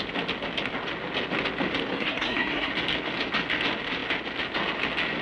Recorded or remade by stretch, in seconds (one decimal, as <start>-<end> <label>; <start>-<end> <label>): 0.0-1.9 recorded; 1.9-2.7 remade; 2.7-5.2 recorded